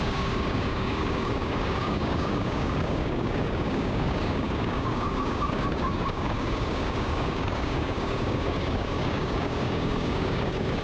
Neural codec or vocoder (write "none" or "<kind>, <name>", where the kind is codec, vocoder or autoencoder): codec, DAC